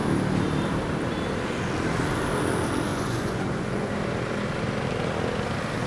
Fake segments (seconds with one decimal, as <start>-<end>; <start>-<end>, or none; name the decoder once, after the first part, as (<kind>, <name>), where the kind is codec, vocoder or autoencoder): 2.9-3.9 (vocoder, Vocos)